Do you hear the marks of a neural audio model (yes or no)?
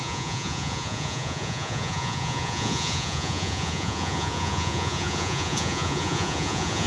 yes